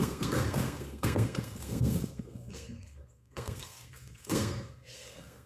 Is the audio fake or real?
fake